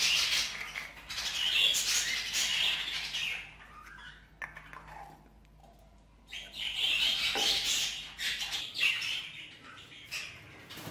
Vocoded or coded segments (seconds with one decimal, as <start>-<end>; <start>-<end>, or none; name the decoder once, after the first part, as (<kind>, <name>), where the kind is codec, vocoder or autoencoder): 2.5-4.3 (vocoder, BigVGAN v2); 5.6-10.9